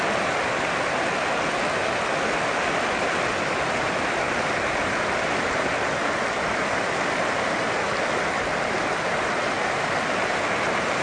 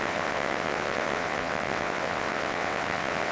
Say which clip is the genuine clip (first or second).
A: first